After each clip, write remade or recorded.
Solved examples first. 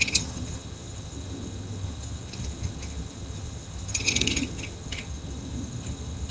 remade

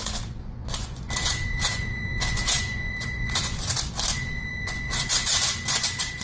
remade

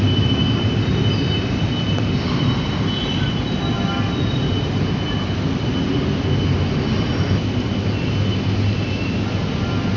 recorded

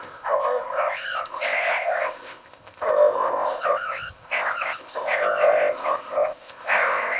remade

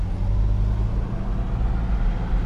recorded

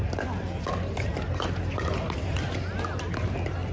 recorded